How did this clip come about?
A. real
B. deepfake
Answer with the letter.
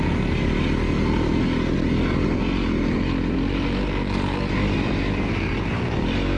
A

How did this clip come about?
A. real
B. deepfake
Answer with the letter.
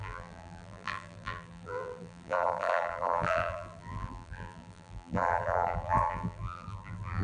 B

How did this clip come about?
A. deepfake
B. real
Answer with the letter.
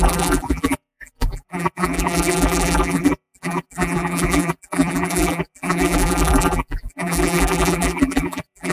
A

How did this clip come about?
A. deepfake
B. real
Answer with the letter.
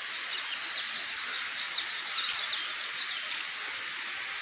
B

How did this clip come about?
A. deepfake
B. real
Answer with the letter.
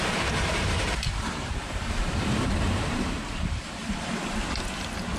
A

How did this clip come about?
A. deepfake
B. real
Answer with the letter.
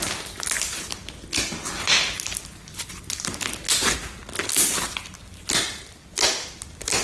B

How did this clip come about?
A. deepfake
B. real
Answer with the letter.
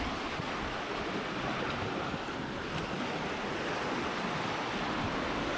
B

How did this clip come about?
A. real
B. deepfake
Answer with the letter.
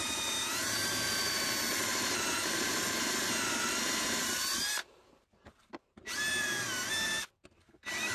B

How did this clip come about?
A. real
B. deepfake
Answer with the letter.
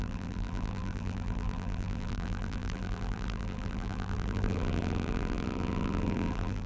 B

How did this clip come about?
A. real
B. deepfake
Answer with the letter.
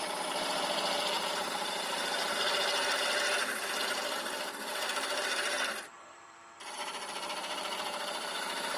B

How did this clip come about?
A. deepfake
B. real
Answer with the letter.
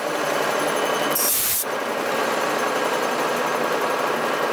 B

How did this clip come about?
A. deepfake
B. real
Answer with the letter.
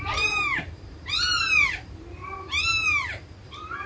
A